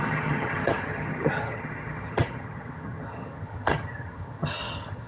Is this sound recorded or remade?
remade